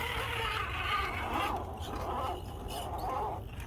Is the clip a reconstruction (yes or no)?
no